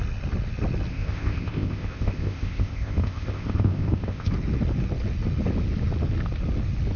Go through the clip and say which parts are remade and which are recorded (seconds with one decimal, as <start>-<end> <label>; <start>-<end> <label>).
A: 0.0-0.9 recorded; 0.9-4.3 remade; 4.3-7.0 recorded

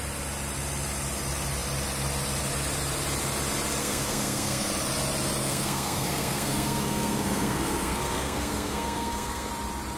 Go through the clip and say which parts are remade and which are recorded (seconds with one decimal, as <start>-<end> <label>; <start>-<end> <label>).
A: 0.0-3.8 recorded; 3.8-4.7 remade; 4.7-5.4 recorded; 5.4-9.5 remade; 9.5-10.0 recorded

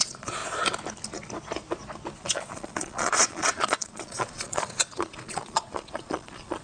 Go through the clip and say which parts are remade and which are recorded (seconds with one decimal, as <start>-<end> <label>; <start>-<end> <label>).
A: 0.0-0.4 remade; 0.4-2.2 recorded; 2.2-6.6 remade

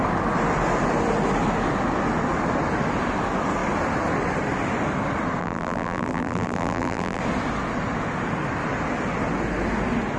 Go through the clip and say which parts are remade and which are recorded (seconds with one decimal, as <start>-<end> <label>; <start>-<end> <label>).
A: 0.0-5.4 recorded; 5.4-7.2 remade; 7.2-10.2 recorded

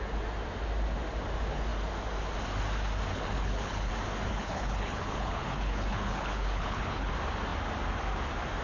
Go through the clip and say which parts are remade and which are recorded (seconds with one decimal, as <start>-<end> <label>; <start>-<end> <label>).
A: 0.0-3.1 recorded; 3.1-3.9 remade; 3.9-4.3 recorded; 4.3-7.1 remade; 7.1-8.6 recorded

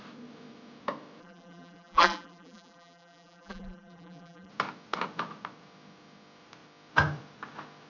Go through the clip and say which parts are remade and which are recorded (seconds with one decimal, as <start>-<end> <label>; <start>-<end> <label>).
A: 0.0-1.2 recorded; 1.2-4.5 remade; 4.5-7.9 recorded